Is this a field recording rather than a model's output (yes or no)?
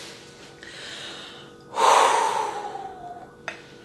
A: yes